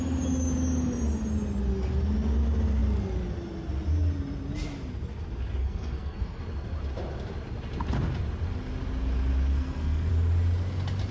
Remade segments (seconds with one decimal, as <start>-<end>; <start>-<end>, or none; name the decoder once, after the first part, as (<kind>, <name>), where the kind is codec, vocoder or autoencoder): 5.6-6.4 (codec, SNAC); 9.5-10.1